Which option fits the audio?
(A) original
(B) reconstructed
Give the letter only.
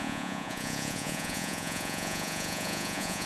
B